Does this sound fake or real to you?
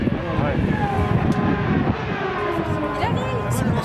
real